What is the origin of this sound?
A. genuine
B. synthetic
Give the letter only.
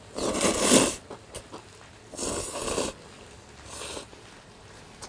A